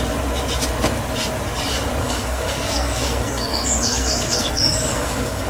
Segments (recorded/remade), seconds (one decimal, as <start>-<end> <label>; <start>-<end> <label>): 0.0-2.0 recorded; 2.0-5.5 remade